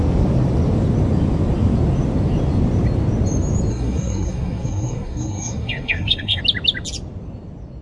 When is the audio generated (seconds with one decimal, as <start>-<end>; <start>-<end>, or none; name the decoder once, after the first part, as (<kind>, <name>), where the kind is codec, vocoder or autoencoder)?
3.7-6.4 (codec, SNAC)